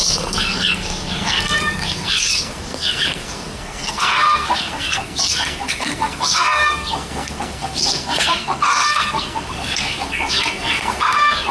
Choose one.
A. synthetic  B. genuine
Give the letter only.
A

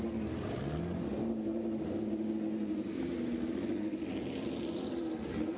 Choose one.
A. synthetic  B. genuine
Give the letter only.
B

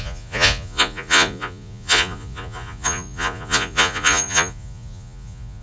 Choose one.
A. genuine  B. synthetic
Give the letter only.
B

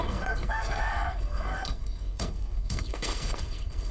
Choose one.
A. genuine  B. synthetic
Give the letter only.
B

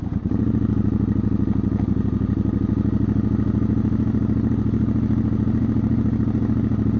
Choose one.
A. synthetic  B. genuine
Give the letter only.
B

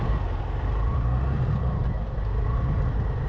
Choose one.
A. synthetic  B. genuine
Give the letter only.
B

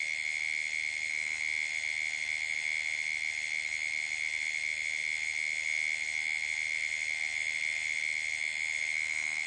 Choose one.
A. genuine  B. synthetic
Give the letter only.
A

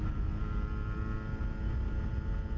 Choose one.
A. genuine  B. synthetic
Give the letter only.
A